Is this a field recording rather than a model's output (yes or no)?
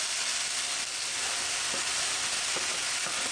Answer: yes